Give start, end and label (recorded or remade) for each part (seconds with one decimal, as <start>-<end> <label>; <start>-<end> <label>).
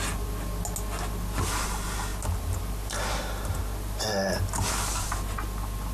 0.0-5.9 recorded